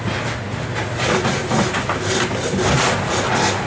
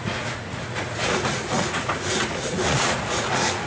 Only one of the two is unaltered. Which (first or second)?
first